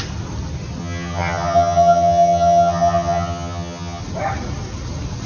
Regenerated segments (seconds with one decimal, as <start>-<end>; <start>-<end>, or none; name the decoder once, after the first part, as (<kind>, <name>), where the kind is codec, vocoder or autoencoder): 0.8-4.0 (vocoder, HiFi-GAN)